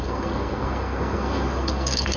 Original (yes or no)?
no